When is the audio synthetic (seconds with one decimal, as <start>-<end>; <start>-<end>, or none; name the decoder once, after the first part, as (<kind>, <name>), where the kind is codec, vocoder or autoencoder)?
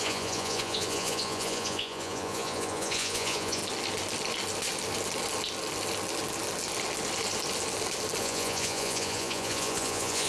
0.0-3.6 (vocoder, Vocos); 8.2-10.3